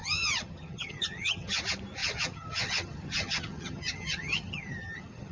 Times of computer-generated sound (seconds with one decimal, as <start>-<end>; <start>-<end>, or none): 0.0-1.6; 2.0-5.3

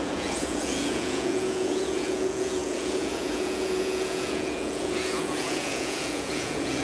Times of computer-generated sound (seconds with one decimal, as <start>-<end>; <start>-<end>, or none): 0.0-6.8

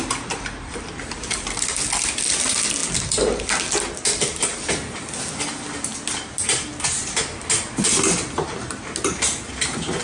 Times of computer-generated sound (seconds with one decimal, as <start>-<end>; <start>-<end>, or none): none

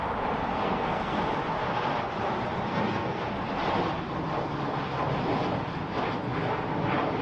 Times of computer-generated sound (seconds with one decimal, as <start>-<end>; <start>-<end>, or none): 0.5-1.2; 2.7-3.3